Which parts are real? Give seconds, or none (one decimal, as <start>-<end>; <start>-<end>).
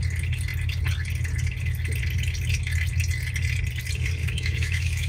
0.0-4.2